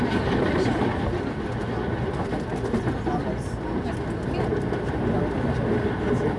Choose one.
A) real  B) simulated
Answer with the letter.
A